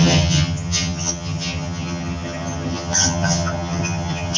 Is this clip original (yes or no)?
no